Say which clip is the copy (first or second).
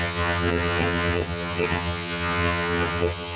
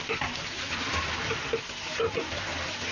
first